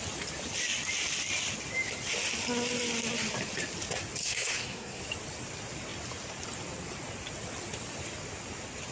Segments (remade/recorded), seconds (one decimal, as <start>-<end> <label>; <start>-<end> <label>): 0.0-4.2 recorded; 4.2-5.0 remade; 5.0-8.9 recorded